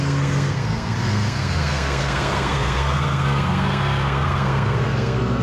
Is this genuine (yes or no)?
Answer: no